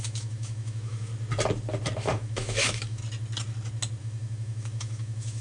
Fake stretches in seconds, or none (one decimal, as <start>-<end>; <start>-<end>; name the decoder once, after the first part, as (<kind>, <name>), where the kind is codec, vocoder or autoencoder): 0.0-1.1 (autoencoder, DAC-VAE); 2.0-3.0; 4.0-5.4